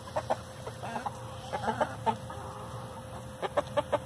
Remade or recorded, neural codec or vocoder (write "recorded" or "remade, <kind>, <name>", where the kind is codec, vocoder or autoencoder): recorded